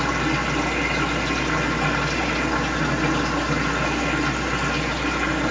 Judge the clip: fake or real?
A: real